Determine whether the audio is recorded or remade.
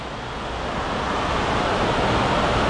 recorded